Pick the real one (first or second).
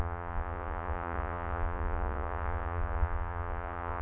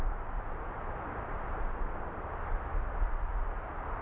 second